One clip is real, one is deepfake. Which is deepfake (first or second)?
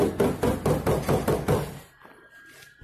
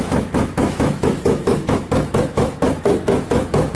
second